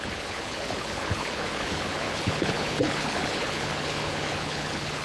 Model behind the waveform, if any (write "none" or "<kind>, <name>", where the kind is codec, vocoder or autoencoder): codec, HILCodec